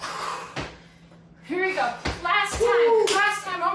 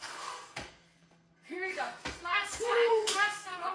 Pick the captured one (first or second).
first